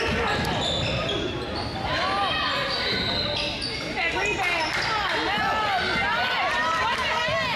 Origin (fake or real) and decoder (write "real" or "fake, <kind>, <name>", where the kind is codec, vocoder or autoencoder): real